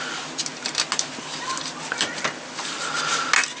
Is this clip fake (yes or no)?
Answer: no